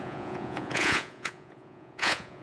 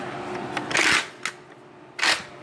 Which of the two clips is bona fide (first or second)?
second